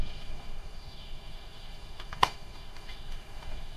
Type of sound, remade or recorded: remade